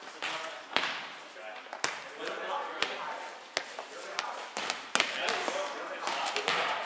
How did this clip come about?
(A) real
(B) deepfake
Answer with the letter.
A